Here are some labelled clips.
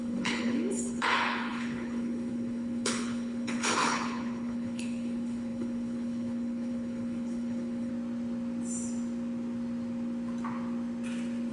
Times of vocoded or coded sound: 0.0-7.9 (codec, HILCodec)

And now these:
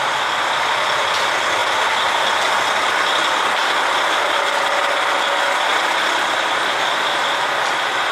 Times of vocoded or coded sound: 0.0-1.6 (vocoder, BigVGAN v2); 2.5-3.6; 4.3-5.7; 6.5-7.2

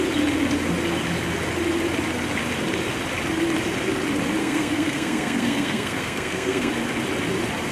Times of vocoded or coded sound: 4.4-6.7 (codec, SNAC)